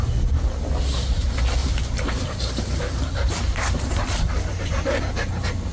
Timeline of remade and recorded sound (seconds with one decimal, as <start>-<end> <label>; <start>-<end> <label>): 0.0-1.6 recorded; 1.6-5.0 remade; 5.0-5.7 recorded